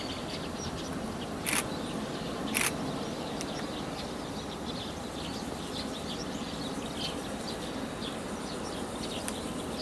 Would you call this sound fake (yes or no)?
no